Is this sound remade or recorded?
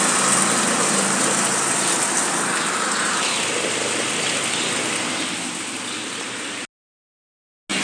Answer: recorded